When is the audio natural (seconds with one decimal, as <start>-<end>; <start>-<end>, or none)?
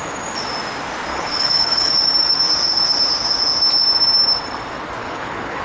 0.0-1.1; 1.9-5.0